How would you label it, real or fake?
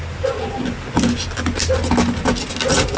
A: real